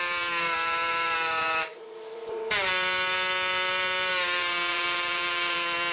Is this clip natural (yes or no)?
no